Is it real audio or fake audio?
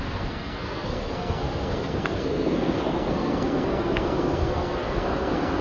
fake